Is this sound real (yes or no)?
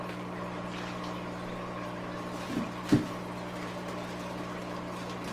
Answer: yes